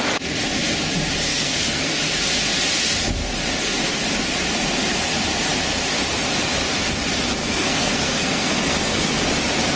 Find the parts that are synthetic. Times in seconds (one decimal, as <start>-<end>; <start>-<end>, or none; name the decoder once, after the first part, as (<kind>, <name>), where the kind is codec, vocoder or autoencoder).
1.3-2.0 (codec, SNAC); 7.4-9.1